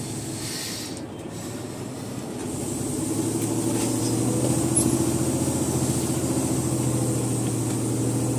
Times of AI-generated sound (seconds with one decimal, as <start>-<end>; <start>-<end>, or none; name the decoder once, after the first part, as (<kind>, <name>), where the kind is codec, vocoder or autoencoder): none